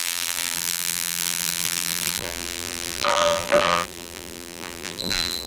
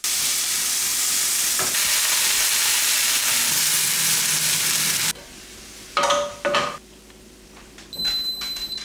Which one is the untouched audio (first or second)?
second